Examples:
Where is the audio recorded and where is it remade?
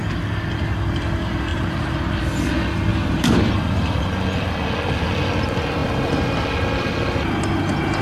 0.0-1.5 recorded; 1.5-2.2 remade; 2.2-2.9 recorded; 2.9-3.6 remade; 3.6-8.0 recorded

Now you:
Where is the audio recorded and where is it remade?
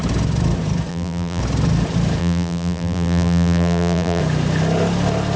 0.0-0.9 recorded; 0.9-1.4 remade; 1.4-2.2 recorded; 2.2-4.2 remade; 4.2-5.4 recorded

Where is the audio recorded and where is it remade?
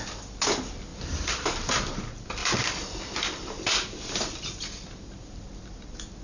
0.0-0.9 recorded; 0.9-1.9 remade; 1.9-2.4 recorded; 2.4-5.4 remade; 5.4-6.2 recorded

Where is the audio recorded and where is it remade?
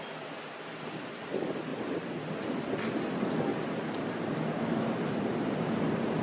0.0-3.5 recorded; 3.5-5.8 remade; 5.8-6.2 recorded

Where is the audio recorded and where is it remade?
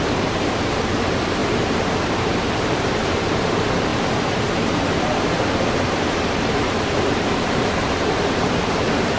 0.0-9.2 remade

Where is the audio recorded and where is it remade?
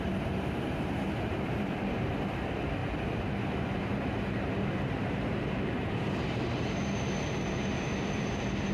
0.0-2.8 remade; 2.8-4.8 recorded; 4.8-8.7 remade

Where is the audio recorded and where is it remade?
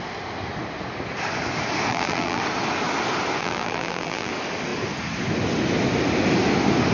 0.0-1.9 recorded; 1.9-2.4 remade; 2.4-3.4 recorded; 3.4-4.3 remade; 4.3-6.9 recorded